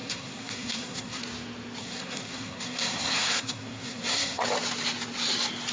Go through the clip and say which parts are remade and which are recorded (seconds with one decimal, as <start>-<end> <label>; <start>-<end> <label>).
0.0-1.2 remade; 1.2-1.8 recorded; 1.8-4.4 remade; 4.4-5.7 recorded